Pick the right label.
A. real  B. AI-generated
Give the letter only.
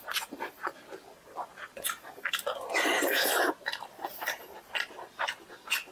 A